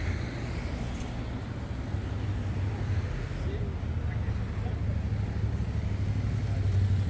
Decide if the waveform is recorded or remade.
recorded